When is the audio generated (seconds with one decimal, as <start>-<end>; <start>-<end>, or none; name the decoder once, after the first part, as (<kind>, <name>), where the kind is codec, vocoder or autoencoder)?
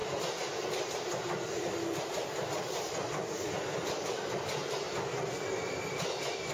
none